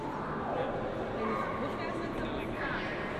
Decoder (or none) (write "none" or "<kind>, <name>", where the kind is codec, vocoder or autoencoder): none